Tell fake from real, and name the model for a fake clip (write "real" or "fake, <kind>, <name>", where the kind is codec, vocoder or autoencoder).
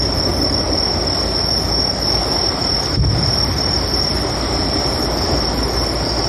real